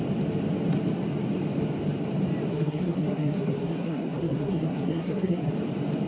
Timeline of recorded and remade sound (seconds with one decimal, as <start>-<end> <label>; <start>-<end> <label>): 0.0-2.5 recorded; 2.5-5.5 remade; 5.5-6.1 recorded